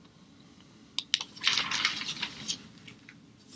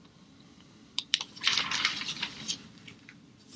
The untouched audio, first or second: first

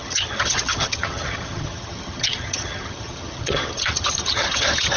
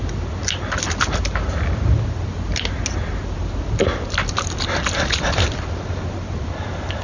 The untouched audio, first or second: second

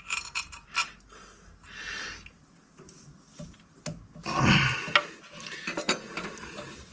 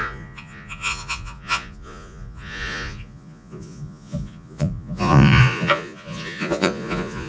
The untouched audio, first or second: first